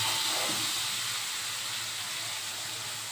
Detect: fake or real real